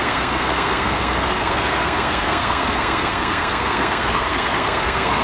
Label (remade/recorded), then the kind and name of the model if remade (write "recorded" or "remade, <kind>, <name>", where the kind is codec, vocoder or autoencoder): remade, codec, SNAC